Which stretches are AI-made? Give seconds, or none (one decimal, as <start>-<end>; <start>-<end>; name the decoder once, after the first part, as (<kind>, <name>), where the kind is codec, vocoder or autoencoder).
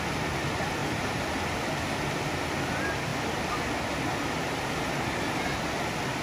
0.8-1.7 (vocoder, BigVGAN v2); 4.4-5.7